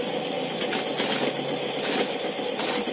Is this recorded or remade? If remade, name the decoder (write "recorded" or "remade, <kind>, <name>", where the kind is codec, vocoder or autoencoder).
recorded